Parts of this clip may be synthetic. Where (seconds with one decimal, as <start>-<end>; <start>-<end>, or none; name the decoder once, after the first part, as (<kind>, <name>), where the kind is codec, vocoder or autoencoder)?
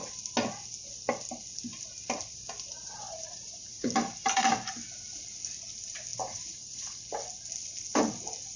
1.7-4.5 (vocoder, BigVGAN v2); 6.1-7.0